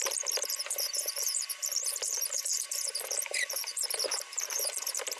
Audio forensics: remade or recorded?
remade